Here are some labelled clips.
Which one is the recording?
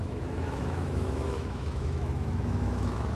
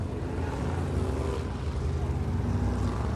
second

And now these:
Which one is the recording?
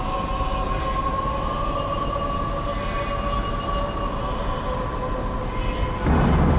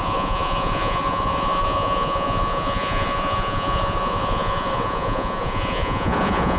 first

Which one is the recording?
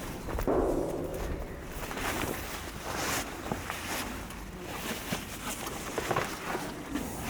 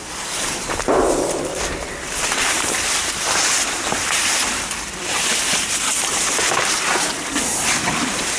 first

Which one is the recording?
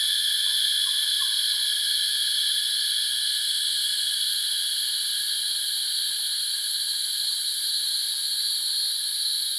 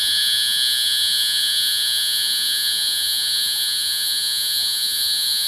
first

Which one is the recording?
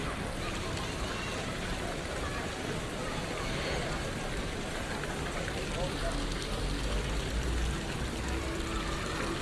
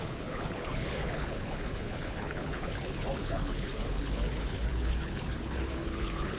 first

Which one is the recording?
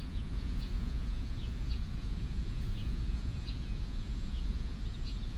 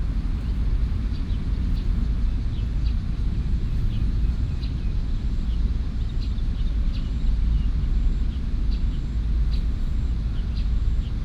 second